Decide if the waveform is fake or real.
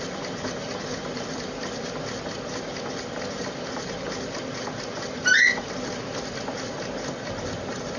real